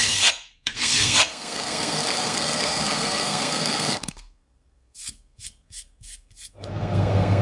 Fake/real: fake